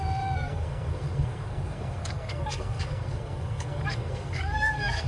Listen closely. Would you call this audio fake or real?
fake